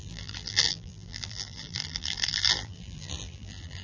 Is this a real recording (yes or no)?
no